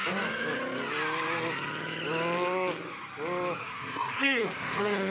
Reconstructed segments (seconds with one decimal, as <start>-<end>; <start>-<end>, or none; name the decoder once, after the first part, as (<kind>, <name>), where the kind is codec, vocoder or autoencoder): 3.6-5.1 (codec, SNAC)